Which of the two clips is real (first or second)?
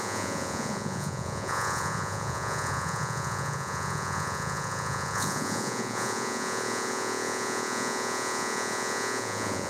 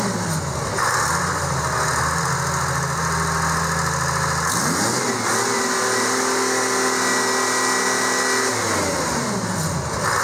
second